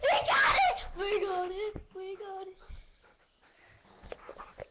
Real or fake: real